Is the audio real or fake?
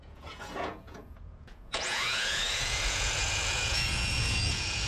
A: fake